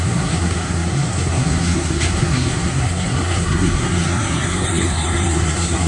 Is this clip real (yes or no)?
no